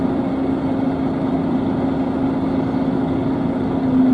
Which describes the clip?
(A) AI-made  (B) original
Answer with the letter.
B